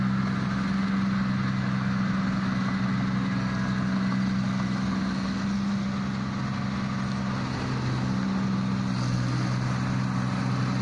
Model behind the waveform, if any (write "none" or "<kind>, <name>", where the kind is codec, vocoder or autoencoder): none